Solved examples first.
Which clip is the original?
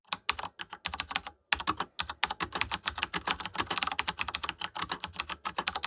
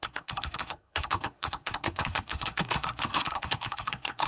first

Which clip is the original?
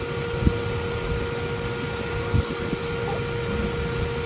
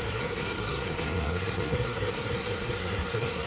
first